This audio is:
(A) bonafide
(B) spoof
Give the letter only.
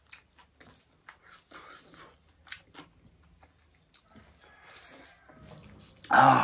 A